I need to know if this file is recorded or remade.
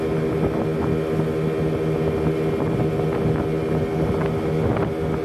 recorded